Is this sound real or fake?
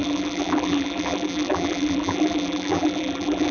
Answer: fake